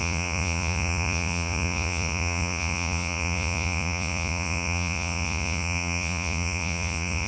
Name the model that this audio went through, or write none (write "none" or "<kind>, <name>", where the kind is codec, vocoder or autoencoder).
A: vocoder, Vocos